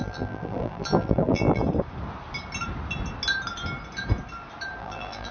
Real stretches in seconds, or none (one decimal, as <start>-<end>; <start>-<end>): 1.6-4.8